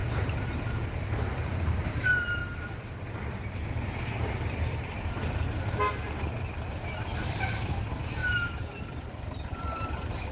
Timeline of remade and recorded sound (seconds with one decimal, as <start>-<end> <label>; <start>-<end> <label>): 0.0-0.9 recorded; 0.9-10.3 remade